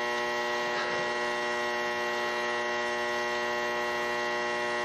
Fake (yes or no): no